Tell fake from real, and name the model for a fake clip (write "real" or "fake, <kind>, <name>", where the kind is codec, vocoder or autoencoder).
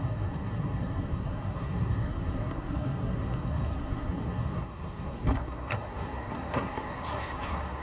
fake, codec, SNAC